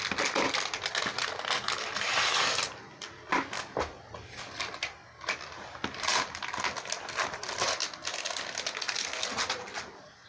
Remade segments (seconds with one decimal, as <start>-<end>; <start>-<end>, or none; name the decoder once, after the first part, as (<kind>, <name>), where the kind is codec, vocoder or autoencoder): none